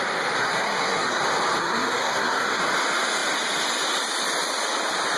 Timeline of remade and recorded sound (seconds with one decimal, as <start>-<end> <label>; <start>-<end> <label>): 0.0-0.4 recorded; 0.4-1.2 remade; 1.2-1.6 recorded; 1.6-2.6 remade; 2.6-5.2 recorded